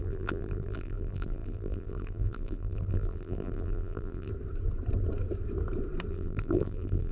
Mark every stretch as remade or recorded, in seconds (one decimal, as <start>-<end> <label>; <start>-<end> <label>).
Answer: 0.0-4.3 remade; 4.3-6.1 recorded; 6.1-7.1 remade